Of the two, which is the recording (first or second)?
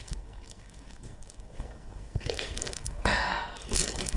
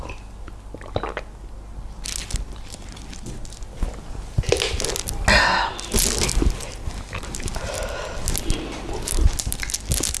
second